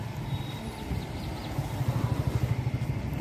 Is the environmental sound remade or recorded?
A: recorded